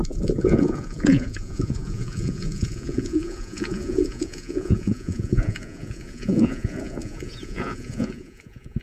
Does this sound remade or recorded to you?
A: remade